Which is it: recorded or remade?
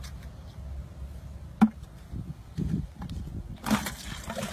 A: recorded